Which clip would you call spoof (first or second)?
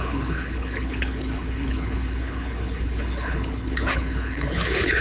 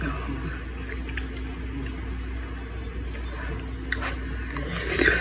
first